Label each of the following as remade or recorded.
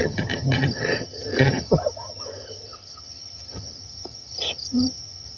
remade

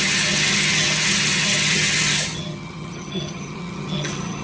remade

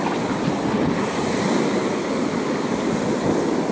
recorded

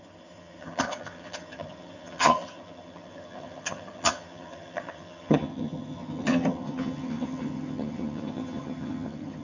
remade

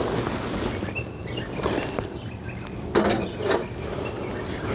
recorded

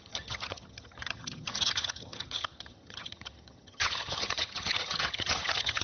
remade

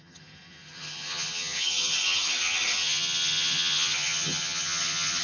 remade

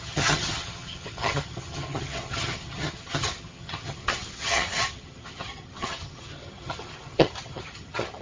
remade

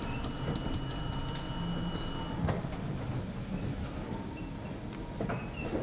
recorded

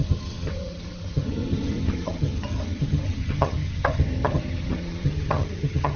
remade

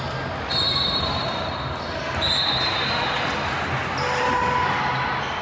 recorded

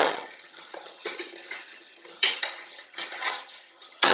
remade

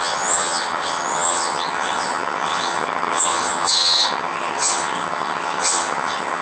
remade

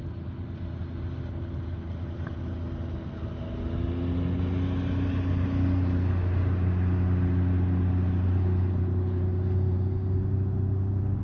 recorded